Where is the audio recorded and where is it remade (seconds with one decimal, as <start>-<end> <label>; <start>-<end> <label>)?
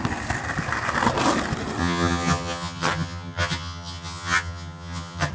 0.0-1.8 recorded; 1.8-5.3 remade